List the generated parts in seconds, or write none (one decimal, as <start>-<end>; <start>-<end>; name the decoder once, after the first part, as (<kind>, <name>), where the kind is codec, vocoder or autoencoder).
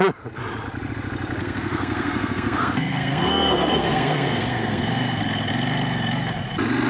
1.4-5.2 (codec, SNAC)